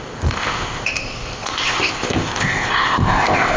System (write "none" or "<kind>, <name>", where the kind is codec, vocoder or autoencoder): codec, ZipCodec